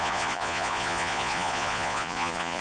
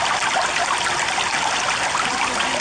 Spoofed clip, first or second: first